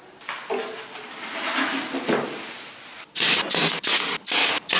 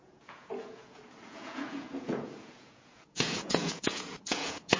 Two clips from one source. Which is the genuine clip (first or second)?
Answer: first